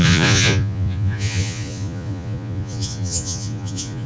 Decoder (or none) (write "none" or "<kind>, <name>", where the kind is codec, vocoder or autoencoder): vocoder, Vocos